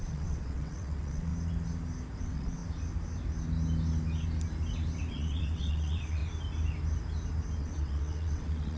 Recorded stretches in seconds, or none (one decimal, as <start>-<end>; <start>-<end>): 1.3-2.2; 2.6-5.1; 6.2-7.6